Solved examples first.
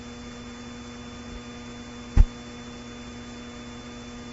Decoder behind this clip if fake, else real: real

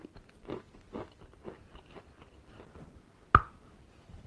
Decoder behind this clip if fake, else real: real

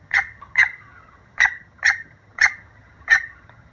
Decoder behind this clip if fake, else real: fake, vocoder, HiFi-GAN